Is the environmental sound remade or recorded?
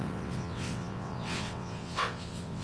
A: remade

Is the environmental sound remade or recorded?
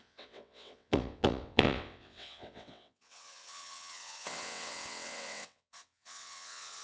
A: remade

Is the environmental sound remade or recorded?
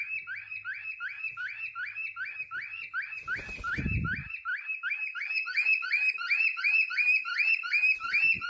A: recorded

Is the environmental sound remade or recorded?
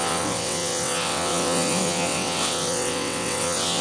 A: remade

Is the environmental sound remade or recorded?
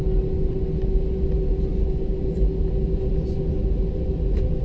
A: recorded